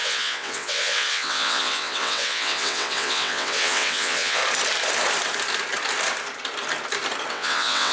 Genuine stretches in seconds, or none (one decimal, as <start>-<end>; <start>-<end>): 4.4-7.3